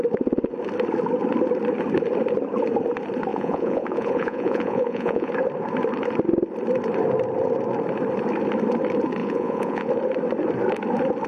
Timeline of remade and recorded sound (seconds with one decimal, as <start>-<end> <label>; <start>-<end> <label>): 0.0-3.3 recorded; 3.3-5.3 remade; 5.3-9.2 recorded; 9.2-9.9 remade; 9.9-11.3 recorded